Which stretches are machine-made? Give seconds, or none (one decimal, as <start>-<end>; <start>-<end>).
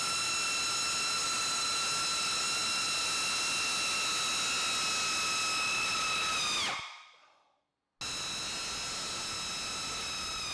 none